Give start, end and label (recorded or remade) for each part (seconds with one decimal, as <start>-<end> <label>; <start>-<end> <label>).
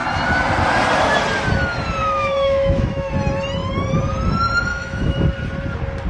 0.0-2.0 recorded; 2.0-3.1 remade; 3.1-4.7 recorded; 4.7-5.2 remade; 5.2-6.1 recorded